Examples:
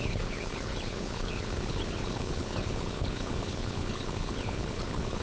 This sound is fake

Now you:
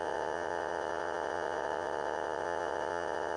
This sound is fake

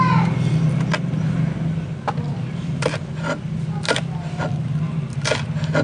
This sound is real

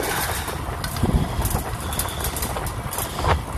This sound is real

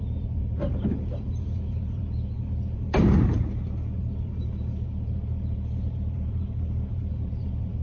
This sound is fake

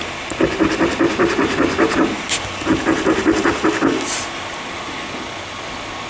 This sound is real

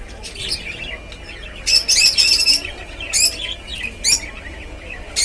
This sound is real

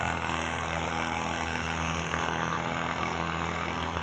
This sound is fake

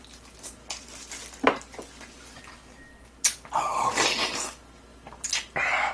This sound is real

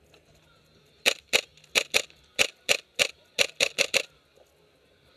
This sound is real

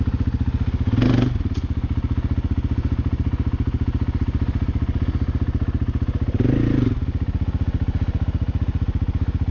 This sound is real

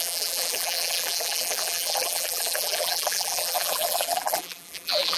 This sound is fake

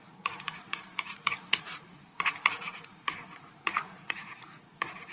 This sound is fake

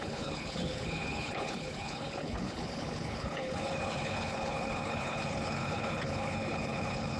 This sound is fake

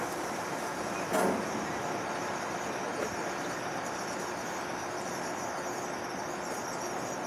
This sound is real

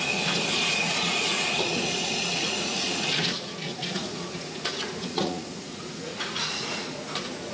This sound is fake